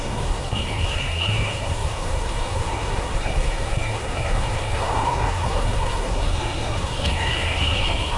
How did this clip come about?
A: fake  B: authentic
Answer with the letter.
A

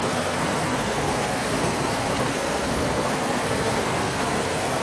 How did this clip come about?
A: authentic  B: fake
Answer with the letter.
B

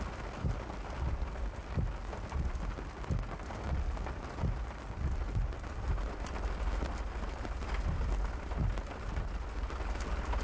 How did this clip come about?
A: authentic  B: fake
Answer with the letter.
A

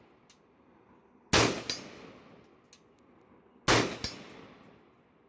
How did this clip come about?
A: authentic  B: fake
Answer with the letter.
A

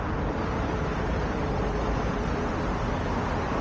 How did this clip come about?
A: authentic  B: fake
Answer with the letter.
A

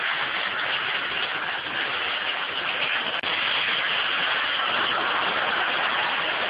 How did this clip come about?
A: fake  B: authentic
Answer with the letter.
B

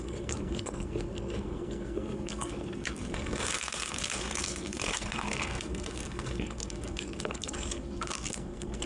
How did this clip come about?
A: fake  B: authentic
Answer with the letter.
A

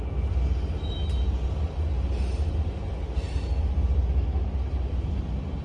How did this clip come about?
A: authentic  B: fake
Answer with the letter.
A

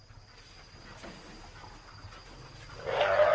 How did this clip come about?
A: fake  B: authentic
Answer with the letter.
B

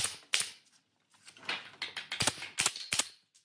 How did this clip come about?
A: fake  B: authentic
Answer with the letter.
B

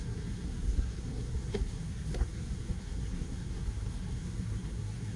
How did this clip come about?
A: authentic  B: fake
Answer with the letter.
B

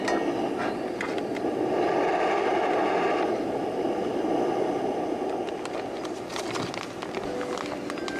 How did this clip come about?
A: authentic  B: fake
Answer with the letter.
A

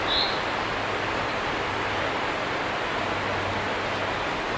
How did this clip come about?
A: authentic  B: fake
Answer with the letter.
A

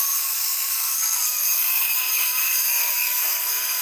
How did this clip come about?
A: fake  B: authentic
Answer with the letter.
A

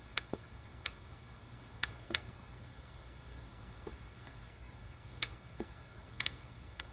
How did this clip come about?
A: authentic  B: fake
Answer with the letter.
B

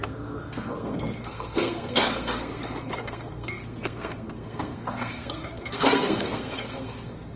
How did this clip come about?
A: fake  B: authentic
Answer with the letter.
A